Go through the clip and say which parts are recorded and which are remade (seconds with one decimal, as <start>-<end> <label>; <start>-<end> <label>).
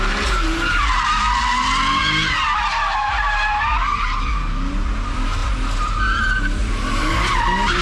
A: 0.0-6.6 recorded; 6.6-7.1 remade; 7.1-7.8 recorded